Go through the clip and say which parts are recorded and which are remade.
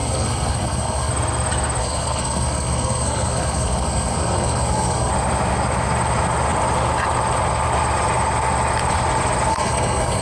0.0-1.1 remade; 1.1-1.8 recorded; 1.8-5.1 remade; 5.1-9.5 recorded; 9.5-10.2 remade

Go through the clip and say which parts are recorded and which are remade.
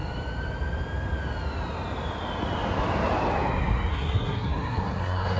0.0-3.9 recorded; 3.9-5.4 remade